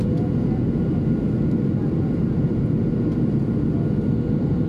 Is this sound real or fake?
real